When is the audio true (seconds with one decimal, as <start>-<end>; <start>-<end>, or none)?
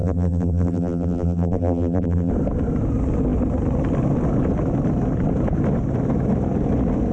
2.3-7.1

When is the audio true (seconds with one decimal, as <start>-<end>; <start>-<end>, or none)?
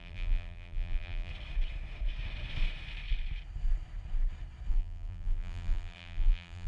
1.3-4.7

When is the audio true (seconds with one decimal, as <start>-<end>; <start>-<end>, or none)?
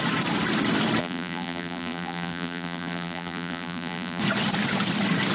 0.0-1.0; 4.2-5.3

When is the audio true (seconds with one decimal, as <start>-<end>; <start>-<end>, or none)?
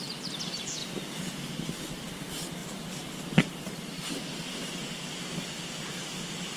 0.0-0.8; 1.5-2.6; 5.5-6.6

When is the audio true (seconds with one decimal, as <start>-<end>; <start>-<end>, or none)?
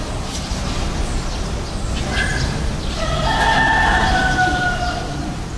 0.0-5.6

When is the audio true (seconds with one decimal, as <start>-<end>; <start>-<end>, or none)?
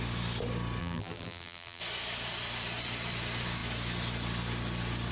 0.0-0.8; 1.8-5.1